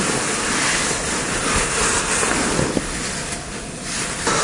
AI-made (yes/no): no